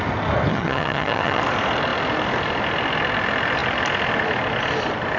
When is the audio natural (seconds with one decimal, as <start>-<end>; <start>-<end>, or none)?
0.0-0.5; 1.4-5.2